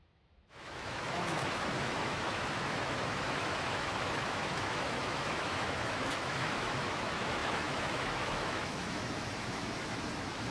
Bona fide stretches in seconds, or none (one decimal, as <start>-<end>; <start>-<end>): none